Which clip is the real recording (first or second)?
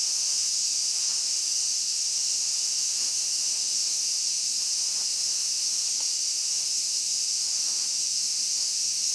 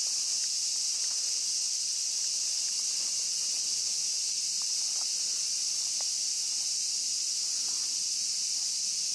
second